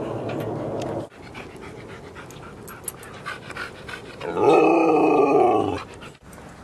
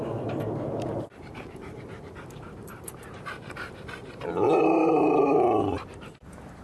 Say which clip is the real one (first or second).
first